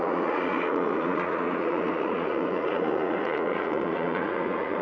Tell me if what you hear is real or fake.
fake